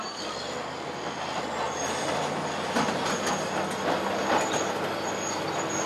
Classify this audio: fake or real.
real